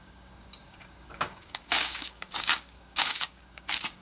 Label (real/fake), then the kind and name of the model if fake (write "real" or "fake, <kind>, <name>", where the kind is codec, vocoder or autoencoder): fake, codec, DAC